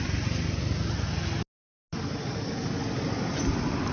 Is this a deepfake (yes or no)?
no